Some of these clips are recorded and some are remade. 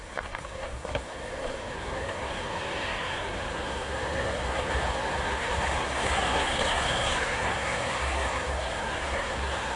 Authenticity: remade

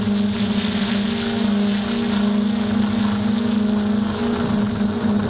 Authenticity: recorded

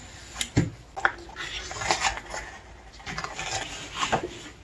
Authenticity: recorded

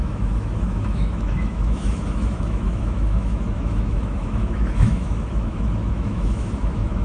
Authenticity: remade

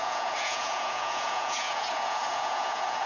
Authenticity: remade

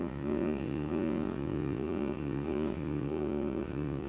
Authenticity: remade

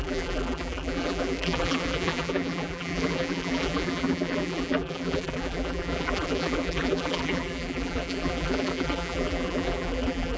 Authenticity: remade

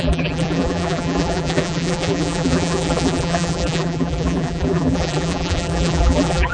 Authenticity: remade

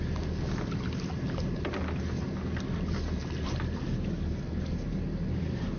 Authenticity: recorded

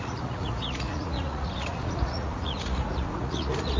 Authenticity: remade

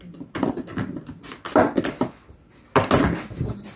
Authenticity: recorded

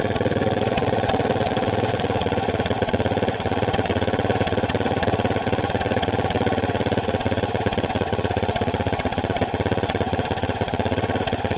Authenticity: remade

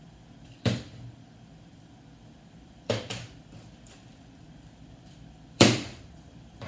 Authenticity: remade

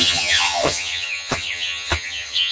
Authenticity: remade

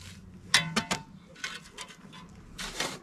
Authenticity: recorded